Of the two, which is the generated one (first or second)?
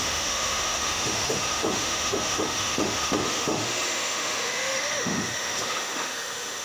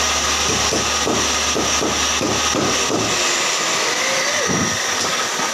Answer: first